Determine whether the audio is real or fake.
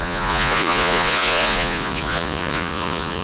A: fake